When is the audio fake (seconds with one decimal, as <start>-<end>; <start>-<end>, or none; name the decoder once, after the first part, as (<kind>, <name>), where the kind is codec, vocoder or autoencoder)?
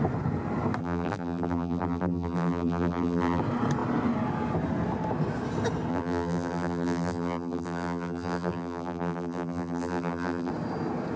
0.8-3.4 (vocoder, BigVGAN v2); 5.9-10.5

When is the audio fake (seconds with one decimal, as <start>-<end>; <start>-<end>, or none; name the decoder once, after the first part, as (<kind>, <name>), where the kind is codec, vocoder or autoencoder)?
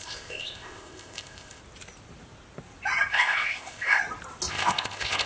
0.0-1.6 (codec, ZipCodec); 3.1-4.0; 4.5-5.3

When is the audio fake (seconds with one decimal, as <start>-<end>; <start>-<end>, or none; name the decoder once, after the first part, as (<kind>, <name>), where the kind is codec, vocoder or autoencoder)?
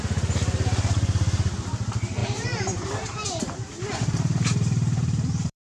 2.2-5.7 (vocoder, BigVGAN v2)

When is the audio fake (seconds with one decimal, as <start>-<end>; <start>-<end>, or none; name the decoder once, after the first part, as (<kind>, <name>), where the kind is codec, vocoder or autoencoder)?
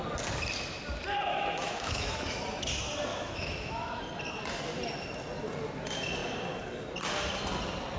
1.3-2.4 (autoencoder, DAC-VAE); 3.1-4.0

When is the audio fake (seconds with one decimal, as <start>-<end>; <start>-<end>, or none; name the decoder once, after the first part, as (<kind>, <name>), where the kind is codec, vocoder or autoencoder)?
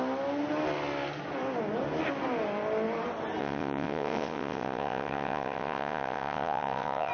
3.4-7.1 (vocoder, WaveNeXt)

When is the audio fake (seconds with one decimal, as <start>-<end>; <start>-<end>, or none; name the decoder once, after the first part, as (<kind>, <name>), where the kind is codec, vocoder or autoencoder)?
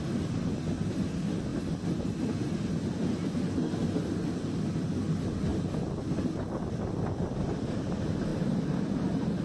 none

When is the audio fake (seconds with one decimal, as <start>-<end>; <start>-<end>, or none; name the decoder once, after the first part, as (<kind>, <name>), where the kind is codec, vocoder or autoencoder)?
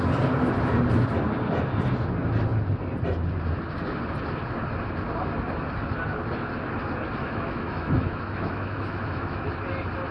7.2-9.5 (autoencoder, DAC-VAE)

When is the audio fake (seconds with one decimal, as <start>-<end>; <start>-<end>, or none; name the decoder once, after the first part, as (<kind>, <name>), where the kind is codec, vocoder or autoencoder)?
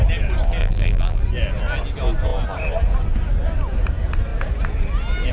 0.6-1.2 (vocoder, BigVGAN v2)